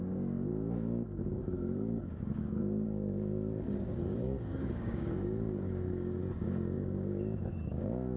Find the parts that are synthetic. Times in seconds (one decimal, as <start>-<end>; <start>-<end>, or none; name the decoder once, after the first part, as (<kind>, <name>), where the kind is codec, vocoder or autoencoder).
0.0-8.2 (codec, DAC)